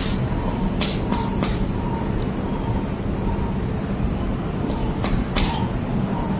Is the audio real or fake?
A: real